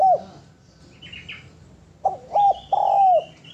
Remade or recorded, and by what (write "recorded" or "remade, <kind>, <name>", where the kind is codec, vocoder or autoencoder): recorded